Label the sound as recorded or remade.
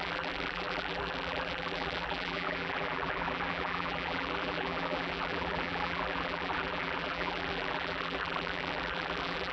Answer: remade